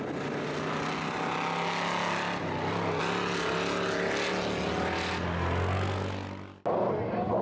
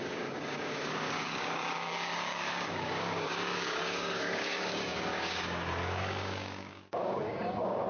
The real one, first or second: first